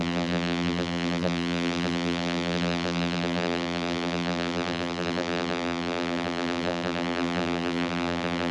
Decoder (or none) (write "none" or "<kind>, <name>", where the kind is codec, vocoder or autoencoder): vocoder, BigVGAN v2